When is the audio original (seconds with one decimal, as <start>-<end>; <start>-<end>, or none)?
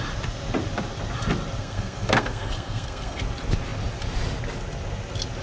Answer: 0.0-1.6; 3.2-5.4